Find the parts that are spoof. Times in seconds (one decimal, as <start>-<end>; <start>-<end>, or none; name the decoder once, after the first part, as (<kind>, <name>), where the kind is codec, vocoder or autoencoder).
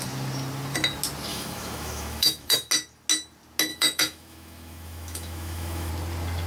1.3-2.7 (autoencoder, DAC-VAE); 3.7-5.9